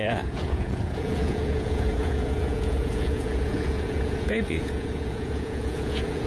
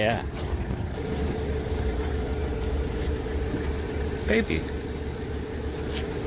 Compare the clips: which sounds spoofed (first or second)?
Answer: first